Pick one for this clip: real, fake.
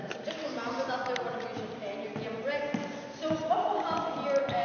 real